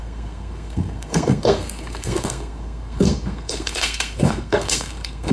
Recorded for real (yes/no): no